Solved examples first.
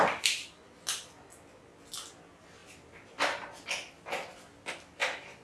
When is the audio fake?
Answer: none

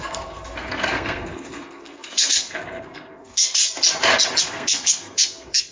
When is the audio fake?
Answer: 0.0-3.6; 4.4-5.7

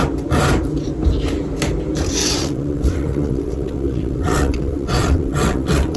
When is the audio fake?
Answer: 2.2-6.0

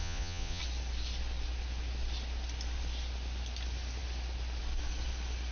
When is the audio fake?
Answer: 0.0-0.6

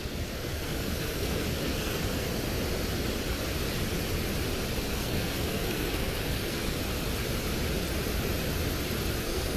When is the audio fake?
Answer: 0.0-2.3; 4.8-6.8; 9.2-9.6

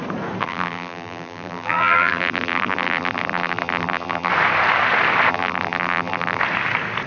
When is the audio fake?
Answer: 0.4-4.3; 5.3-6.4

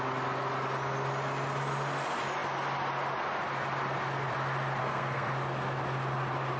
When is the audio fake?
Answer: 4.8-5.3